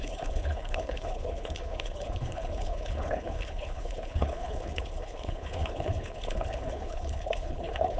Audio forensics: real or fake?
fake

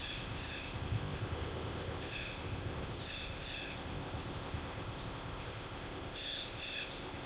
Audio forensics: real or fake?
fake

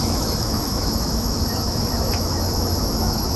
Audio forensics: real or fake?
fake